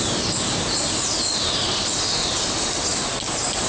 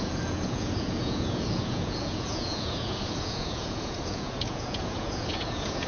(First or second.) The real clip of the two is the first